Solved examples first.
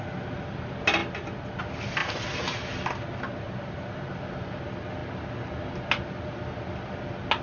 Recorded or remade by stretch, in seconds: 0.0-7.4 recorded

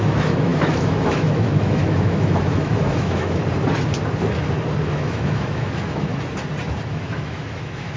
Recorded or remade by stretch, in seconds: 0.0-3.4 remade; 3.4-4.8 recorded; 4.8-6.1 remade; 6.1-6.9 recorded; 6.9-8.0 remade

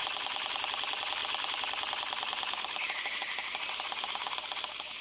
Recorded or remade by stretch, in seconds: 0.0-0.6 remade; 0.6-1.2 recorded; 1.2-3.7 remade; 3.7-5.0 recorded

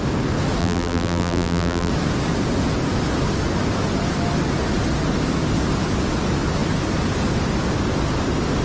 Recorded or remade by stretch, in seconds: 0.0-0.6 recorded; 0.6-1.9 remade; 1.9-8.6 recorded

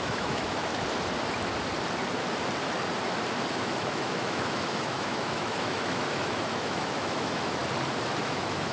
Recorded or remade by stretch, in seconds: 0.0-0.7 remade; 0.7-3.5 recorded; 3.5-7.6 remade; 7.6-8.2 recorded; 8.2-8.7 remade

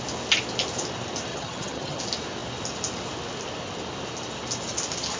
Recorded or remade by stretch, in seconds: 0.0-1.3 recorded; 1.3-2.0 remade; 2.0-5.2 recorded